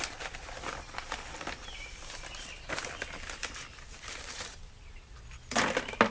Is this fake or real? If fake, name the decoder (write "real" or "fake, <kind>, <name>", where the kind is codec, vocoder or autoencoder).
real